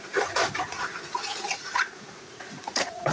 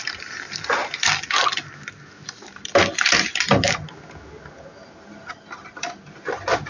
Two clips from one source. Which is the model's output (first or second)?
first